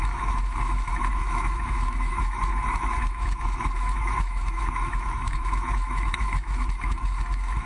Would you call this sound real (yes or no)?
no